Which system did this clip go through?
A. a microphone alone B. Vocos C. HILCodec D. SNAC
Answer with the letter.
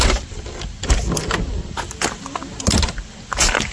A